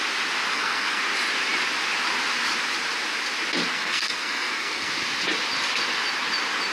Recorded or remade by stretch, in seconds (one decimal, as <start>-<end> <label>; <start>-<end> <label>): 0.0-0.5 recorded; 0.5-1.0 remade; 1.0-3.7 recorded; 3.7-4.9 remade; 4.9-6.7 recorded